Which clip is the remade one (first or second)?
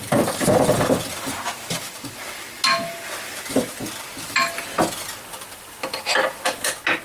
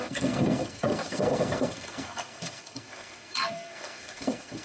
second